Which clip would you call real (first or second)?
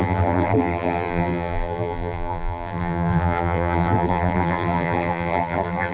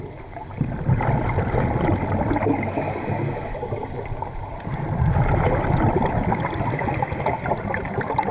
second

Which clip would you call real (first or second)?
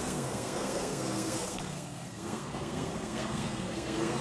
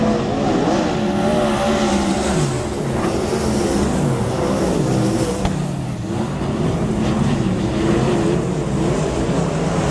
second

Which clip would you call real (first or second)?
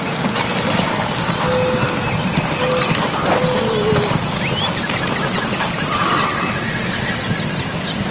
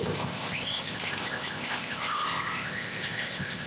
first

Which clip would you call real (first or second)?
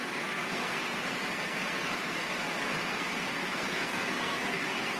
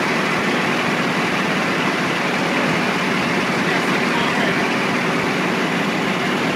second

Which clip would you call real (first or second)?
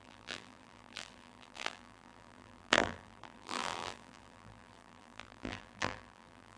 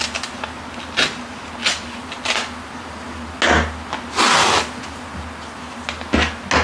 second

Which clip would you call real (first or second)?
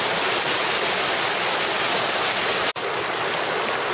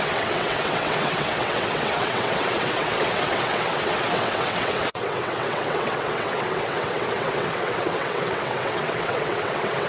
first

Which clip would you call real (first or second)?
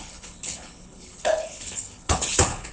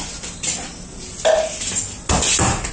second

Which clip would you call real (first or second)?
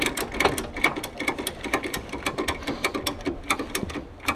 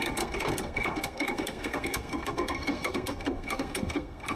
first